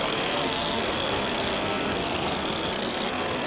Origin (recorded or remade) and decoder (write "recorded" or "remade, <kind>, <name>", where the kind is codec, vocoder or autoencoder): remade, codec, SNAC